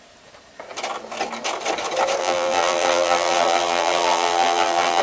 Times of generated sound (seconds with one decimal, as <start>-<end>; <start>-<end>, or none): 2.2-5.0